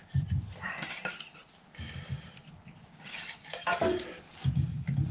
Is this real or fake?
real